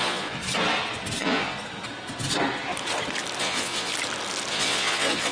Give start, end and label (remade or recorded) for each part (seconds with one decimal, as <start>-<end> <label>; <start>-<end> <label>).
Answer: 0.0-0.4 remade; 0.4-1.2 recorded; 1.2-1.6 remade; 1.6-3.4 recorded; 3.4-3.9 remade; 3.9-4.5 recorded; 4.5-5.3 remade